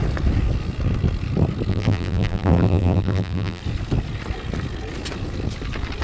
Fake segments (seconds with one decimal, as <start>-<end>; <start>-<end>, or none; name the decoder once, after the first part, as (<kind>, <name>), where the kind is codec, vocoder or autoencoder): 1.7-3.6 (vocoder, BigVGAN v2)